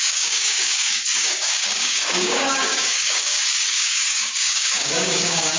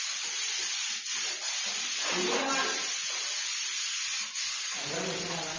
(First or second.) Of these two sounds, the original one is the second